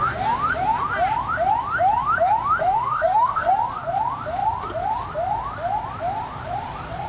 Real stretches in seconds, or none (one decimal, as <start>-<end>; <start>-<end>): 0.0-2.6; 3.5-7.1